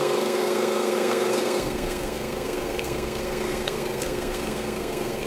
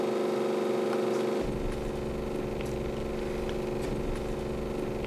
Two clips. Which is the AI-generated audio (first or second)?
first